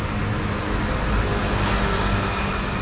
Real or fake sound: real